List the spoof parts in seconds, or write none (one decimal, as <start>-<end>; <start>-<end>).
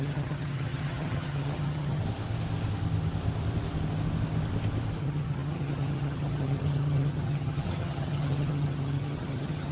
0.0-2.0; 5.0-9.7